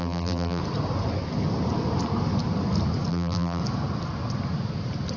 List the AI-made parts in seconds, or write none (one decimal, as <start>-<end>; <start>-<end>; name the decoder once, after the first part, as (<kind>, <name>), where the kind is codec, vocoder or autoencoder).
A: 0.0-0.6 (vocoder, BigVGAN v2); 3.1-3.6